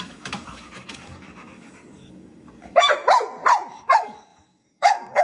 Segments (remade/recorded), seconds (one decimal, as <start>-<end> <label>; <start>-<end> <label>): 0.0-2.9 remade; 2.9-3.7 recorded; 3.7-5.2 remade

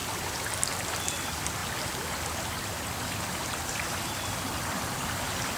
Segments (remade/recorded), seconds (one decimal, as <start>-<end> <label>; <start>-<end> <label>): 0.0-1.0 recorded; 1.0-1.6 remade; 1.6-3.3 recorded; 3.3-5.6 remade

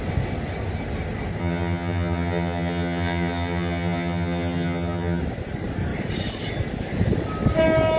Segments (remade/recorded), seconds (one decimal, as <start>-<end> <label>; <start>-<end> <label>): 0.0-1.4 recorded; 1.4-5.2 remade; 5.2-8.0 recorded

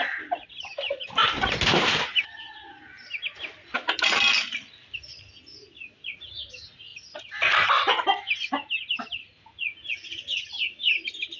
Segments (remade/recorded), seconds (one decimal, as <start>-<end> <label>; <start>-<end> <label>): 0.0-11.4 recorded

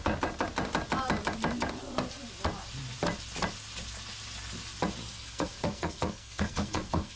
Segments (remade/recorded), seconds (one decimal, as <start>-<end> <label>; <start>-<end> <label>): 0.0-5.0 recorded; 5.0-7.2 remade

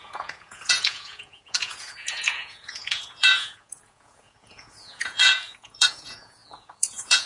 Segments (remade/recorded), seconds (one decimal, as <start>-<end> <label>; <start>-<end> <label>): 0.0-7.3 remade